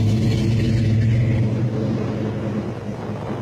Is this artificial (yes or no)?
no